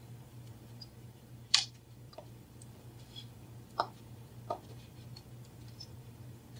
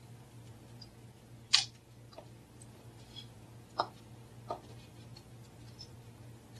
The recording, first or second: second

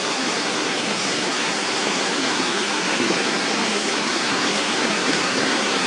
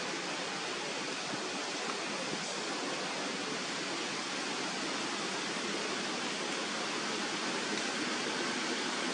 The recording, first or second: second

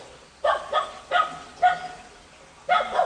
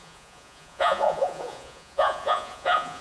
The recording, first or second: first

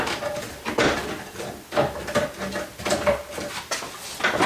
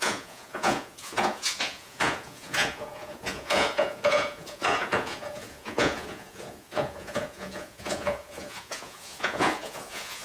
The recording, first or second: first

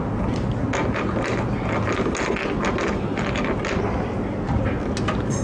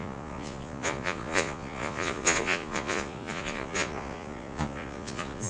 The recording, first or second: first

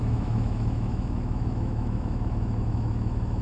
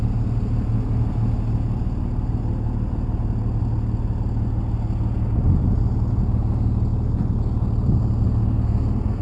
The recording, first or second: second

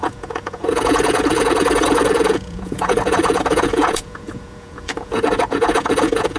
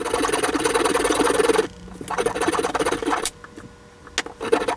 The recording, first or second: second